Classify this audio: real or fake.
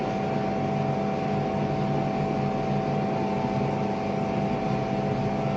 real